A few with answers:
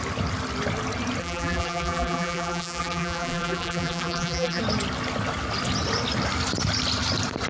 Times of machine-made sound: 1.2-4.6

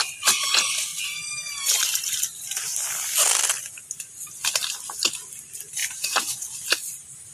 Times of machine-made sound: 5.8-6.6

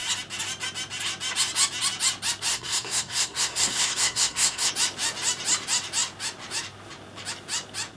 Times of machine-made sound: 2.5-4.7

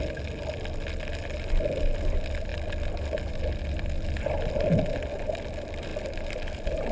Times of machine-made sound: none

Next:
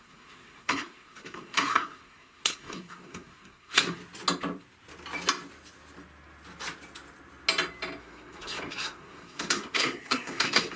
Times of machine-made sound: 0.0-4.0; 8.0-10.8

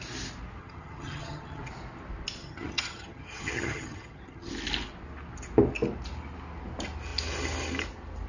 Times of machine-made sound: 0.6-1.6; 2.4-4.5

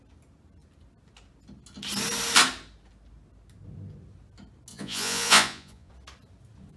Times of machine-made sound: 4.7-5.9